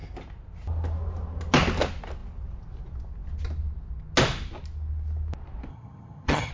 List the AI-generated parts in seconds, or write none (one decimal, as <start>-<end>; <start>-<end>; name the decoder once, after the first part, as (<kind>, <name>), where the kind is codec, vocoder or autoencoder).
5.7-6.5 (vocoder, HiFi-GAN)